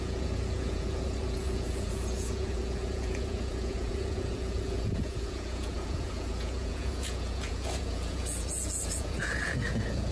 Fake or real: fake